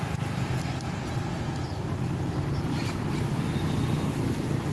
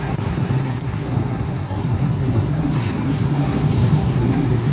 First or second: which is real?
first